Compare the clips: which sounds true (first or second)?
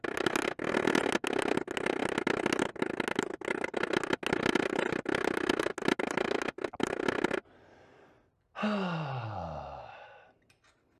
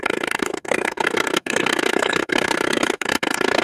first